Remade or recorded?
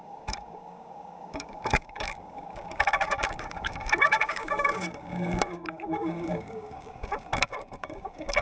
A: remade